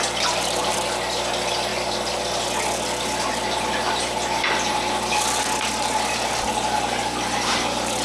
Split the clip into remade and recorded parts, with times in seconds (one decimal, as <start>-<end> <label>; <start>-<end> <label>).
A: 0.0-8.0 recorded